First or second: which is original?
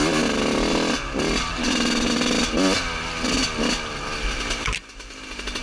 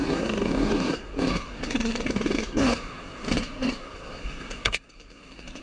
first